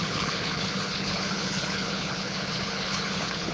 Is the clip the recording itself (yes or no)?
no